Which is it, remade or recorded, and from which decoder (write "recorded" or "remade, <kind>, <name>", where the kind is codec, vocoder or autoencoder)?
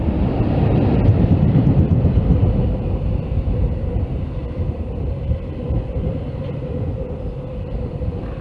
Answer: remade, vocoder, BigVGAN v2